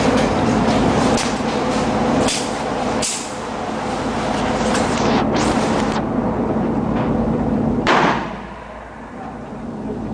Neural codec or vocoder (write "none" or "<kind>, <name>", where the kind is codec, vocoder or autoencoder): vocoder, BigVGAN v2